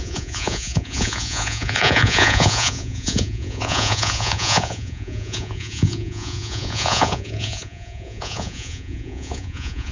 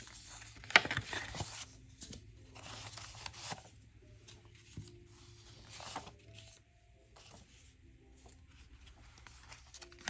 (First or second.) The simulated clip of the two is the first